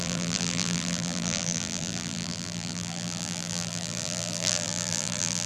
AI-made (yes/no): yes